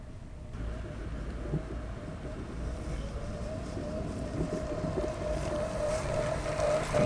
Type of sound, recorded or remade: recorded